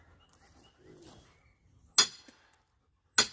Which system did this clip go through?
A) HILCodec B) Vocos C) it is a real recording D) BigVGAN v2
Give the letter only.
C